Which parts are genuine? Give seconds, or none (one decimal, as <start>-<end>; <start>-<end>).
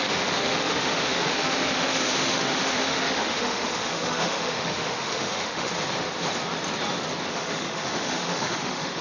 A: 5.7-7.3